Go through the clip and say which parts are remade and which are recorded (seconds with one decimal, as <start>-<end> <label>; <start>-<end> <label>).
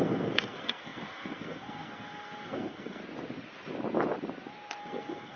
0.0-3.0 remade; 3.0-4.8 recorded; 4.8-5.4 remade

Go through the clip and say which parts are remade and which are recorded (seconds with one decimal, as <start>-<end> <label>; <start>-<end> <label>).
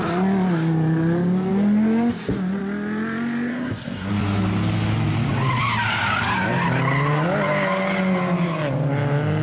0.0-3.5 recorded; 3.5-4.1 remade; 4.1-9.4 recorded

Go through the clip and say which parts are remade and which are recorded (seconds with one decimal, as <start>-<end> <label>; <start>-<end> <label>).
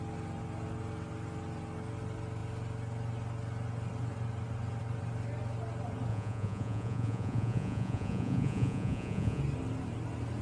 0.0-6.1 recorded; 6.1-9.4 remade; 9.4-10.4 recorded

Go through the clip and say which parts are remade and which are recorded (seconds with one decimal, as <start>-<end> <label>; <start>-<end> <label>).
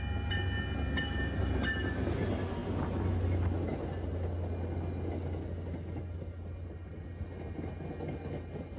0.0-8.8 recorded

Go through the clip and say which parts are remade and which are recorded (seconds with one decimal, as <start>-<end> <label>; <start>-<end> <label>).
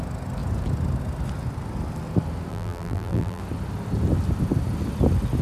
0.0-2.5 recorded; 2.5-3.4 remade; 3.4-5.4 recorded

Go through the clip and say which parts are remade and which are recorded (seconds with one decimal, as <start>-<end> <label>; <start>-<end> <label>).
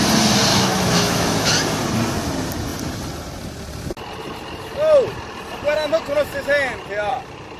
0.0-0.5 recorded; 0.5-1.5 remade; 1.5-7.6 recorded